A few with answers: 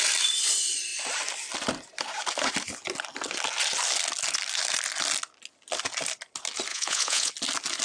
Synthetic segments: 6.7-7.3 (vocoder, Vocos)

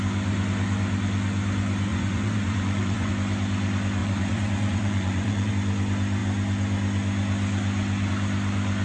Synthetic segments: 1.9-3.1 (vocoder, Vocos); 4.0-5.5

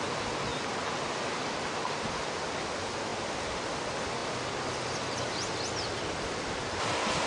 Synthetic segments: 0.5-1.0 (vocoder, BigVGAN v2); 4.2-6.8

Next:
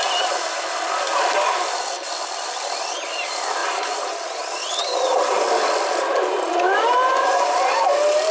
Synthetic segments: none